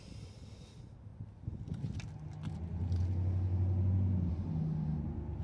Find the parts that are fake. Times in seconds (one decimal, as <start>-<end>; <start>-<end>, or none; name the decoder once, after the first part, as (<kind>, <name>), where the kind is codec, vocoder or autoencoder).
none